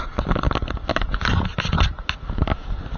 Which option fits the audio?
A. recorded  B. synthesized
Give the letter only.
A